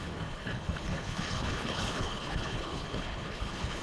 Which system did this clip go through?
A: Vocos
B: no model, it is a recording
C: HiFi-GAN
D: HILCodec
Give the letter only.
D